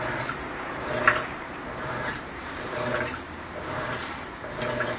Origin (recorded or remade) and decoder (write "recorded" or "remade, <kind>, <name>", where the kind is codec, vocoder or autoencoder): remade, vocoder, BigVGAN v2